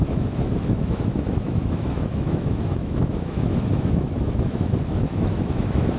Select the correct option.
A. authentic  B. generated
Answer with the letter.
B